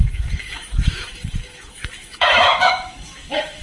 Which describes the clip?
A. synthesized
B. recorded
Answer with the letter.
A